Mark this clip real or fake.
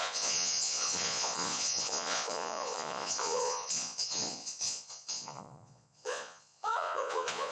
fake